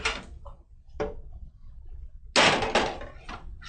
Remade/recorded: recorded